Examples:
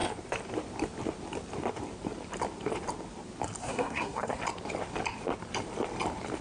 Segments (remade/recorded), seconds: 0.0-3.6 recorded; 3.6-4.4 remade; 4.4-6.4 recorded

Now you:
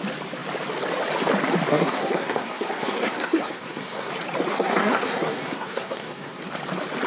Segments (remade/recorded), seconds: 0.0-1.7 recorded; 1.7-4.1 remade; 4.1-4.5 recorded; 4.5-6.4 remade; 6.4-7.1 recorded

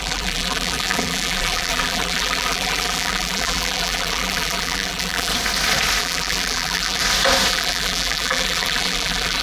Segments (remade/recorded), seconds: 0.0-5.3 remade; 5.3-6.0 recorded; 6.0-7.0 remade; 7.0-7.5 recorded; 7.5-9.4 remade